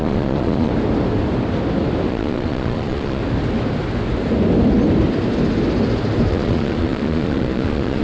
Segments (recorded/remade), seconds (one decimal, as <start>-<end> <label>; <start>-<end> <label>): 0.0-0.7 remade; 0.7-2.1 recorded; 2.1-3.2 remade; 3.2-6.3 recorded; 6.3-8.0 remade